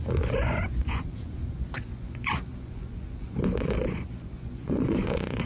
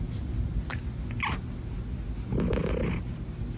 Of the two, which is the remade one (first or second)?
first